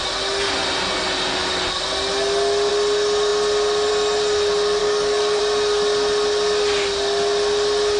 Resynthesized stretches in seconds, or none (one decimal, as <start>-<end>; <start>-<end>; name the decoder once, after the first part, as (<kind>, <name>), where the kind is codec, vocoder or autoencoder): 4.8-5.4 (codec, DAC)